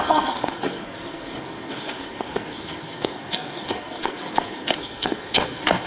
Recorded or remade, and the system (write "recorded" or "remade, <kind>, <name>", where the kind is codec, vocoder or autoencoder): remade, codec, SNAC